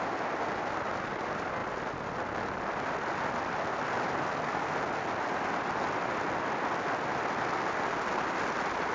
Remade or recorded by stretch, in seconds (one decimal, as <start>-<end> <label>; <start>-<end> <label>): 0.0-8.9 recorded